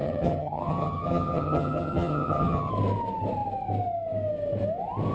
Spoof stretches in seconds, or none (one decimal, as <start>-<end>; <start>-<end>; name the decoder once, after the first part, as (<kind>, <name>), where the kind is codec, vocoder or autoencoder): 0.0-2.7 (vocoder, HiFi-GAN)